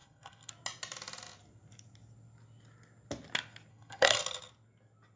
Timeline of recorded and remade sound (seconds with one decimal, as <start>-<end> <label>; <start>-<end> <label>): 0.0-0.5 remade; 0.5-3.7 recorded; 3.7-4.2 remade; 4.2-5.2 recorded